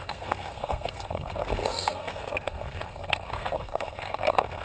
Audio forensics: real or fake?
fake